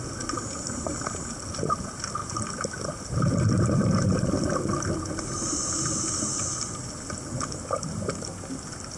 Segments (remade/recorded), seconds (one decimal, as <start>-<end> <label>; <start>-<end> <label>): 0.0-9.0 recorded